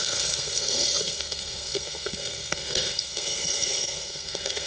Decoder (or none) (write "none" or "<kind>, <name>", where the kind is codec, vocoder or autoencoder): codec, SNAC